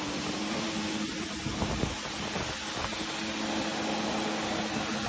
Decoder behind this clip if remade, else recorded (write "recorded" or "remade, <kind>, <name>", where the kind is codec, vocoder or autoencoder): recorded